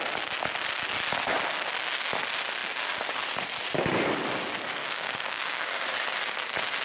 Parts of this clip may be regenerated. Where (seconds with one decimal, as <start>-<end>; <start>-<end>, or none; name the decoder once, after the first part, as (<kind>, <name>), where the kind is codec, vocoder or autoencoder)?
4.8-5.8 (codec, DAC)